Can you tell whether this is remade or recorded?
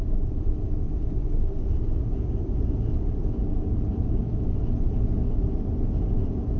recorded